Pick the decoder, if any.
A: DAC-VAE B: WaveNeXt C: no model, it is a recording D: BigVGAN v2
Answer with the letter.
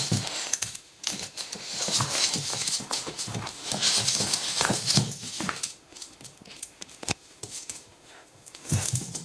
A